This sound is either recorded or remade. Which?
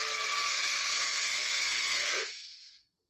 remade